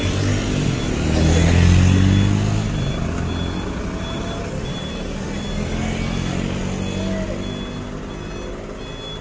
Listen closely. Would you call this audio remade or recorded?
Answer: recorded